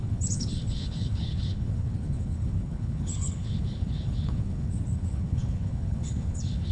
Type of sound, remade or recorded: remade